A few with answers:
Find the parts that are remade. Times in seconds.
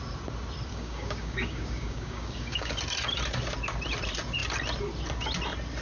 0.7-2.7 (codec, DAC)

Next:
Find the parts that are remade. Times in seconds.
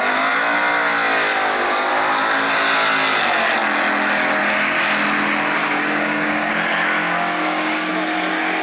1.3-1.9 (codec, DAC); 5.6-6.5; 7.0-7.9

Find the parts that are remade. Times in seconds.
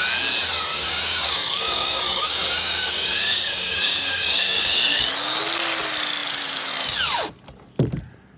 0.7-5.1 (codec, DAC)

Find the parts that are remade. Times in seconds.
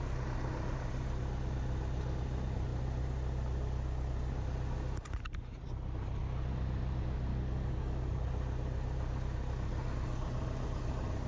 7.3-8.1 (codec, DAC)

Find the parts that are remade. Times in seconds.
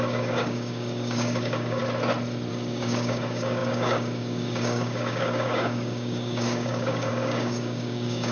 0.0-1.8 (codec, DAC); 2.5-8.3